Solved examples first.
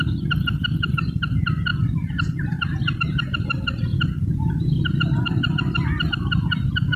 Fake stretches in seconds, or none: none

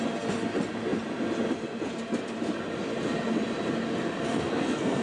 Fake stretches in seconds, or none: 4.3-5.0 (codec, SNAC)

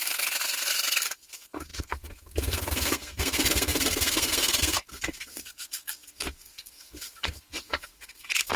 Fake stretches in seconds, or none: 0.0-8.6 (codec, SNAC)

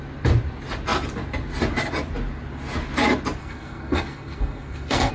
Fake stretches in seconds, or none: 3.4-5.1 (codec, SNAC)

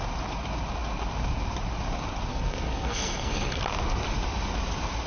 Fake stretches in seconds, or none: 2.3-3.6 (codec, SNAC)

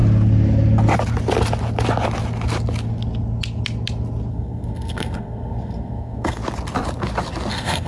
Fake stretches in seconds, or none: 4.3-6.4 (codec, SNAC); 7.5-7.9

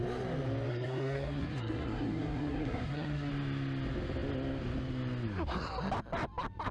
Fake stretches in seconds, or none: 0.7-3.3 (codec, SNAC)

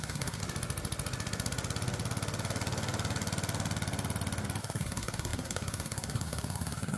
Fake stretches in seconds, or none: 0.0-0.4 (codec, SNAC); 4.6-7.0